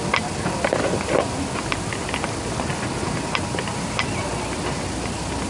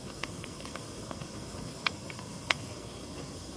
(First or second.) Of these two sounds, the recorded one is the first